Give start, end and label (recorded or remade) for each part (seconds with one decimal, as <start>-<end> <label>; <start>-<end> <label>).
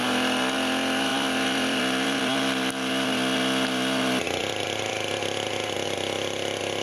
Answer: 0.0-1.1 recorded; 1.1-2.2 remade; 2.2-4.4 recorded; 4.4-4.9 remade; 4.9-6.8 recorded